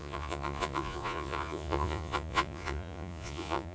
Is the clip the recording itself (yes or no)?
no